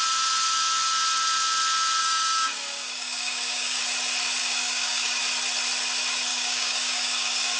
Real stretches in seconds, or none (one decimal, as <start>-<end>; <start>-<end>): 0.0-2.0; 3.8-4.4; 5.2-6.3